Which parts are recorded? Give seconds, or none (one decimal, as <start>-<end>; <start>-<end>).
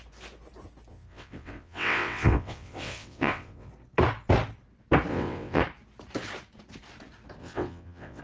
0.0-0.9; 3.7-5.1; 5.6-7.4